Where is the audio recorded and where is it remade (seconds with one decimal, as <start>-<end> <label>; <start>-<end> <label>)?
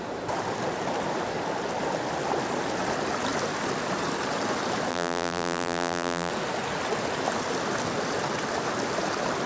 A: 0.0-4.9 recorded; 4.9-6.3 remade; 6.3-9.5 recorded